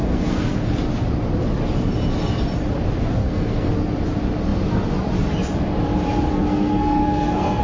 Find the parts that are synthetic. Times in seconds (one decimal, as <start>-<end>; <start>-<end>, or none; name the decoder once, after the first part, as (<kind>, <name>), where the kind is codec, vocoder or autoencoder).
0.0-0.7 (codec, SNAC); 3.2-3.7; 6.3-7.6